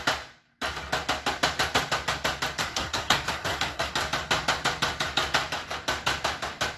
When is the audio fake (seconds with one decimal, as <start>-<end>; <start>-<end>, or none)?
2.6-3.9